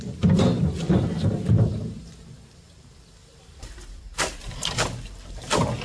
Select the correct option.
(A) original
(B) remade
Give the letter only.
A